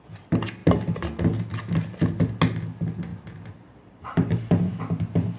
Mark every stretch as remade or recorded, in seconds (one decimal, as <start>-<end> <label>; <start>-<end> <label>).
0.0-3.1 recorded; 3.1-4.8 remade; 4.8-5.4 recorded